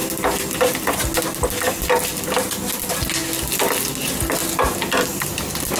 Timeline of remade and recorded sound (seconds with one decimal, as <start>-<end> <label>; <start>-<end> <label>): 0.0-5.8 recorded